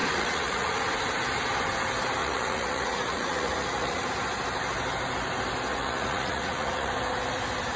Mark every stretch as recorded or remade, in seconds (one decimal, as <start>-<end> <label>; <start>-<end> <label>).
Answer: 0.0-0.8 remade; 0.8-2.2 recorded; 2.2-4.1 remade; 4.1-5.7 recorded; 5.7-6.9 remade; 6.9-7.8 recorded